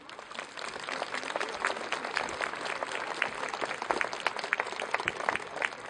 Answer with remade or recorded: recorded